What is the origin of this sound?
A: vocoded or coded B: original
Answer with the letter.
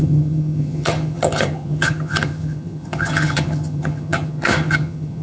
A